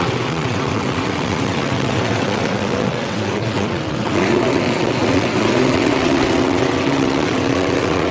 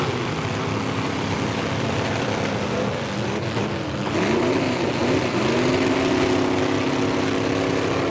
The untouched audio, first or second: second